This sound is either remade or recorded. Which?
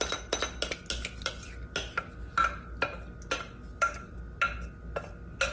recorded